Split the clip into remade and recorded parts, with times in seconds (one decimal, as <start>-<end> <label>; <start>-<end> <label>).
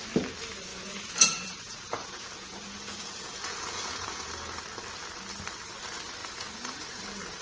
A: 0.0-0.7 recorded; 0.7-4.6 remade; 4.6-6.2 recorded; 6.2-7.0 remade; 7.0-7.4 recorded